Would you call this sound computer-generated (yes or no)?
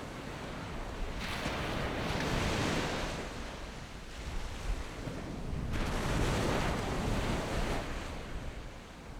no